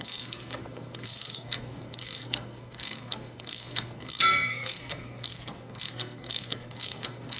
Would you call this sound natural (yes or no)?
no